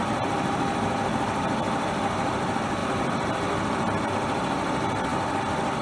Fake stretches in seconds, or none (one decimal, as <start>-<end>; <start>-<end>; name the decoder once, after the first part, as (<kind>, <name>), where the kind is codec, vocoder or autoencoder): none